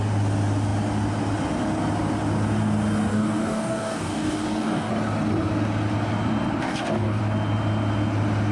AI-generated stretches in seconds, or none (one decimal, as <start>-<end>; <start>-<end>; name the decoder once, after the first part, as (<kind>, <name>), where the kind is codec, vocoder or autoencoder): 3.1-4.9 (codec, DAC); 6.6-7.2